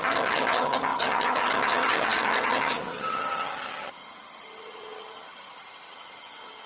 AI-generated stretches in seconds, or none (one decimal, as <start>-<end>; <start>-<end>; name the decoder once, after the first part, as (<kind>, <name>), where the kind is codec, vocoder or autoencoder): 0.0-6.7 (vocoder, HiFi-GAN)